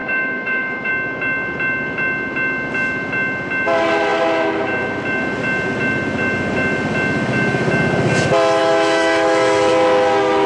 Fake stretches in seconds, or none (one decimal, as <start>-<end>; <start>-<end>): 0.0-0.9; 8.6-9.7